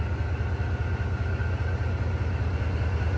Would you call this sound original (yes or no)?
yes